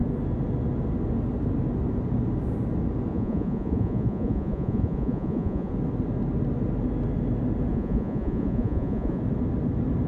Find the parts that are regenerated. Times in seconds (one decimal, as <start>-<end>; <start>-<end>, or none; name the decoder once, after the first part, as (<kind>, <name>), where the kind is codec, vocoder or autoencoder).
3.1-5.7 (vocoder, Vocos); 7.7-9.2